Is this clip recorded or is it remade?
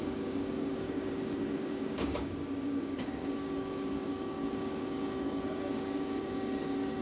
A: remade